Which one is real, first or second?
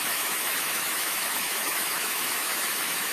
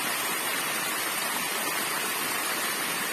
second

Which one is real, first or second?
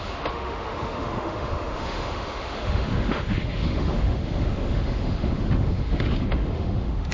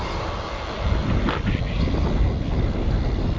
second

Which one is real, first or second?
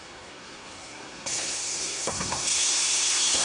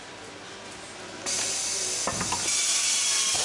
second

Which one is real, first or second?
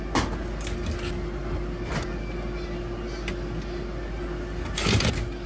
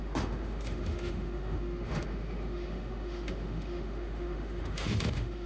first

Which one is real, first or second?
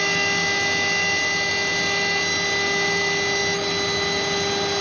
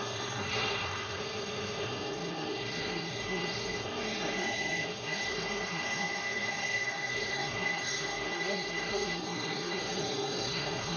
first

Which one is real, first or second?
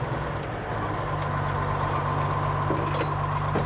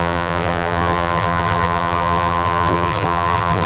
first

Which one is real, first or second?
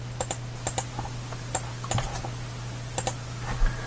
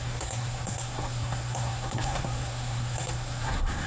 first